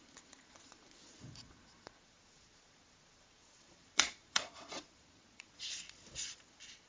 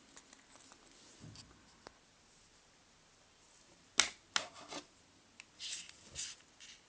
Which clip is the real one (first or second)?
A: second